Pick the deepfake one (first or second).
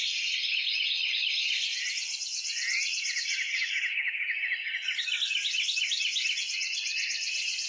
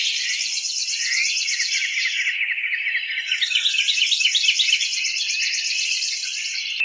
second